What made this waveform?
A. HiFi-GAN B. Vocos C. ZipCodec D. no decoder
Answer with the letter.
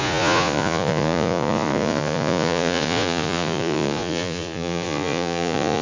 B